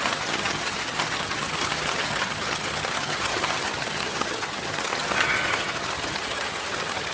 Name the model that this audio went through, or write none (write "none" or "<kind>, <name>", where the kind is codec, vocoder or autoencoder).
vocoder, HiFi-GAN